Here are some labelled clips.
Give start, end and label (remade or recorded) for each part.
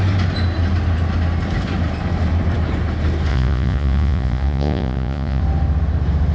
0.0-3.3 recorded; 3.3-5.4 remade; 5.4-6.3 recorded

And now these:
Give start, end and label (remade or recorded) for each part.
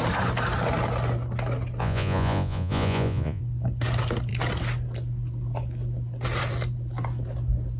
0.0-1.8 recorded; 1.8-3.4 remade; 3.4-7.8 recorded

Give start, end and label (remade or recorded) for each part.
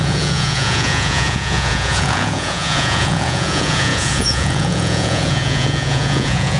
0.0-6.6 remade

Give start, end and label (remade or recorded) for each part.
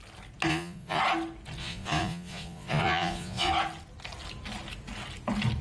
0.0-0.5 recorded; 0.5-1.0 remade; 1.0-1.6 recorded; 1.6-3.5 remade; 3.5-5.6 recorded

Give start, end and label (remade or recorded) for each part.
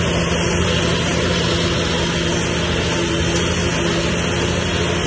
0.0-5.1 recorded